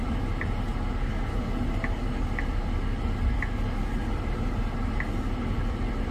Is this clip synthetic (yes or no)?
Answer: no